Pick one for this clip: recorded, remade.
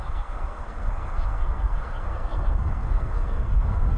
remade